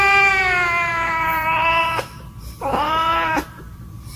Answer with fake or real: fake